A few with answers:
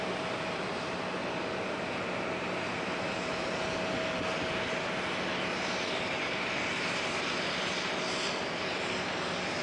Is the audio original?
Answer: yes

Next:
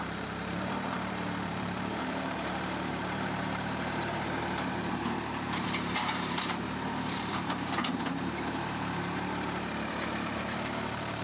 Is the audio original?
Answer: no